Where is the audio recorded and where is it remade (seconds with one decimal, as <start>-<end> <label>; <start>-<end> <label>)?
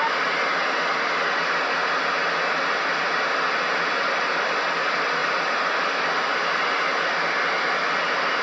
0.0-8.4 recorded